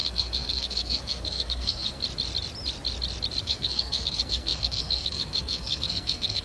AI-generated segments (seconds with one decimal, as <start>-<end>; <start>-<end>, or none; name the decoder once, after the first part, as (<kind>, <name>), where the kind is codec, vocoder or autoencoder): 0.0-2.0 (codec, SNAC); 3.4-6.4